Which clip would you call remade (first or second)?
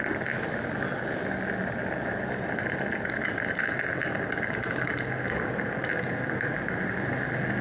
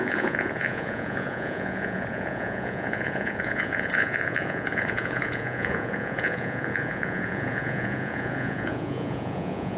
second